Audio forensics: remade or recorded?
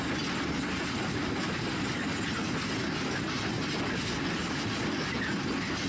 recorded